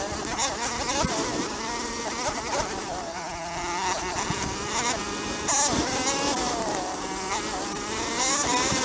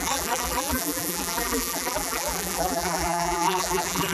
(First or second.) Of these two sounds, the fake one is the second